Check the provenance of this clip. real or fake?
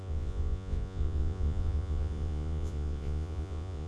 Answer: fake